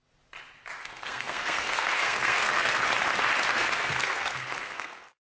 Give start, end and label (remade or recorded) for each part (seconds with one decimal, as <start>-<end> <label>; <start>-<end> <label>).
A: 0.0-0.8 recorded; 0.8-2.8 remade; 2.8-3.5 recorded; 3.5-5.3 remade